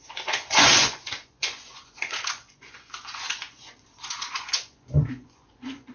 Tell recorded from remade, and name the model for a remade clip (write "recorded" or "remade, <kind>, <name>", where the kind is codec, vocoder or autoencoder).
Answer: remade, vocoder, Vocos